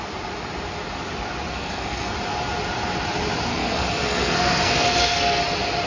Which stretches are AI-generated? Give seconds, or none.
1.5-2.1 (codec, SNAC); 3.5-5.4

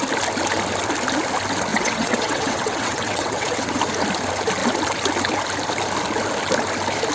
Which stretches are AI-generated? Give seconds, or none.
1.7-3.8 (vocoder, WaveNeXt)

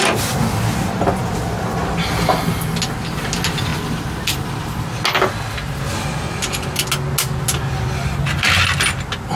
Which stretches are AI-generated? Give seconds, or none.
none

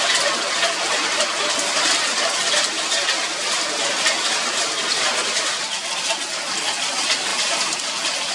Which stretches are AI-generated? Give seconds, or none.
none

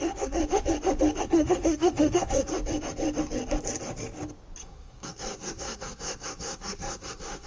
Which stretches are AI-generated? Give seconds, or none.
0.0-0.4 (codec, SNAC); 1.2-2.5; 4.6-7.5

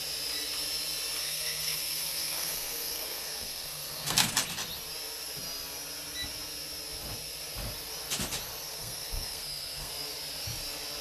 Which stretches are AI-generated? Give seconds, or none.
1.2-4.3 (codec, SNAC); 8.7-9.9

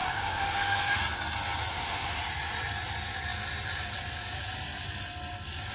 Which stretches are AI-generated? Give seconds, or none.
0.0-1.0 (autoencoder, DAC-VAE); 1.7-2.2

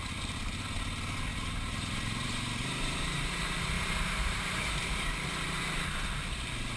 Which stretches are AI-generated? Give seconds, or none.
1.3-4.9 (vocoder, BigVGAN v2)